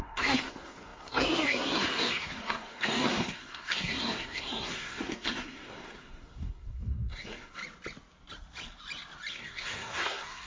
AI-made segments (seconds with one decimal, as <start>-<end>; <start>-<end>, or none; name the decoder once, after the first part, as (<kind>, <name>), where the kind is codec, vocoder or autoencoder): 0.0-7.6 (codec, SNAC); 9.3-10.5